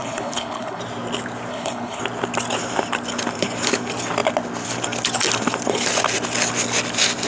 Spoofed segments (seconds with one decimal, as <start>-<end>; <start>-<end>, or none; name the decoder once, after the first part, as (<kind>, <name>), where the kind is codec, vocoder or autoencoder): 0.0-0.8 (codec, HILCodec); 1.5-2.0